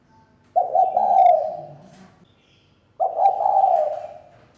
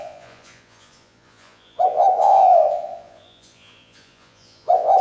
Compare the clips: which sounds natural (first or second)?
first